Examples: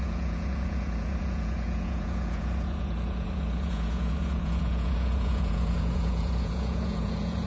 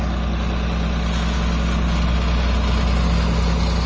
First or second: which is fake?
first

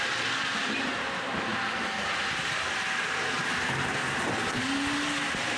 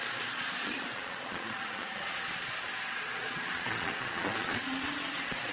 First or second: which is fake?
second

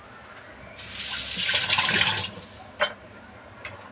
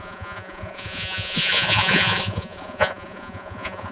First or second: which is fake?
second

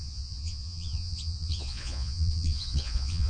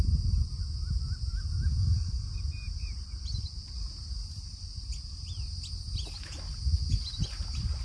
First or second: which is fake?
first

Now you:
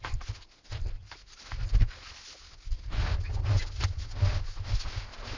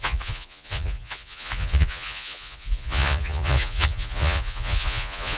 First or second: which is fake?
second